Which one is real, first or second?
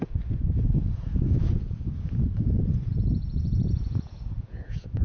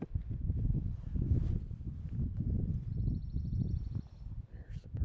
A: second